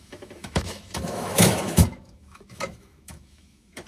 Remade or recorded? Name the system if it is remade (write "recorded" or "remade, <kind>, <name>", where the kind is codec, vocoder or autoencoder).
remade, autoencoder, DAC-VAE